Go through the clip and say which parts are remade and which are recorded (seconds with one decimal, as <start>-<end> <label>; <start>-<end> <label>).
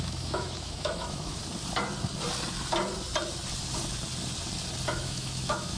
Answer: 0.0-1.4 remade; 1.4-4.9 recorded; 4.9-5.8 remade